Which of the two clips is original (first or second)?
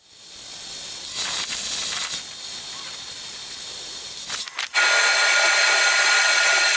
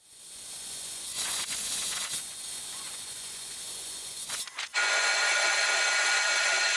first